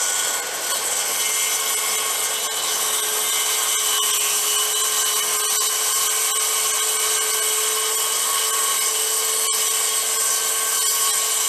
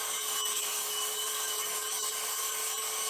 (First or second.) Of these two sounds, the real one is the first